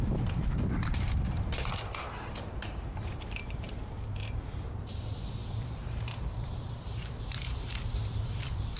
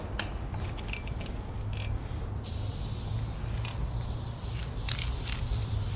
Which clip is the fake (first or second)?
first